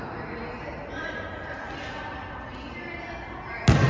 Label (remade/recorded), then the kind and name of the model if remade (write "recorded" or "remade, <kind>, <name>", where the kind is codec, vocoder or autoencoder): recorded